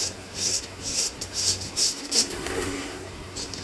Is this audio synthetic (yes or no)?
yes